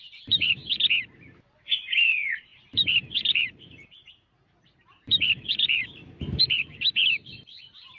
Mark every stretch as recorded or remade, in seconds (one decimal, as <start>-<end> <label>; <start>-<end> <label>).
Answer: 0.0-0.6 remade; 0.6-1.5 recorded; 1.5-5.8 remade; 5.8-6.4 recorded; 6.4-8.0 remade